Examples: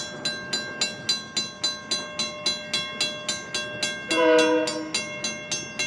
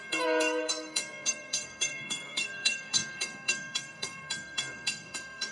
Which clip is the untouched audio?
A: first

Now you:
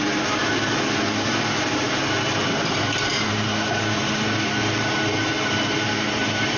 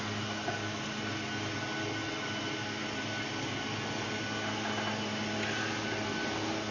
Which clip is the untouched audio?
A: second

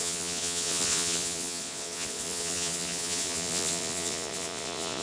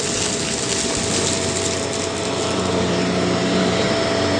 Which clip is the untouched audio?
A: second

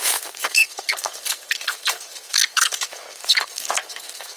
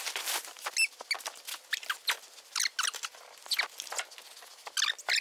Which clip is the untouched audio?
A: second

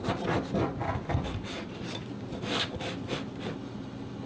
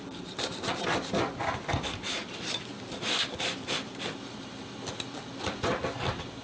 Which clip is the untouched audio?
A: first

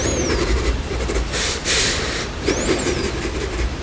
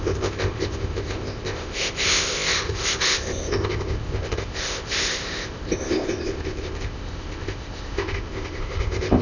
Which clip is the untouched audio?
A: first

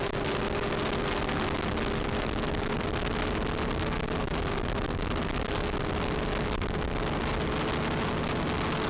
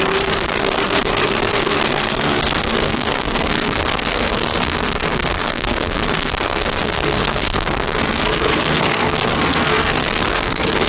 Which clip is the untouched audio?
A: first